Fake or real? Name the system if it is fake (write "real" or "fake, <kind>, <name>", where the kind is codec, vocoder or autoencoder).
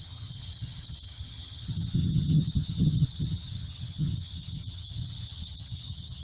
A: fake, vocoder, HiFi-GAN